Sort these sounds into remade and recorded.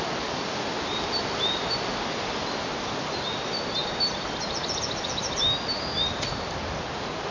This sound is recorded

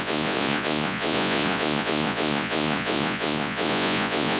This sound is remade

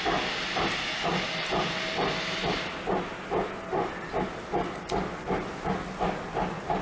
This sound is recorded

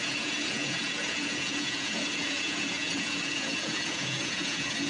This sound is remade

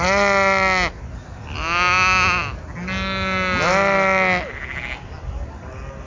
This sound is recorded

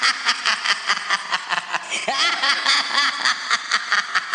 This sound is recorded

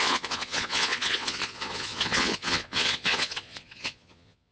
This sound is remade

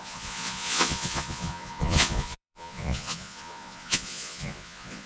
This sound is remade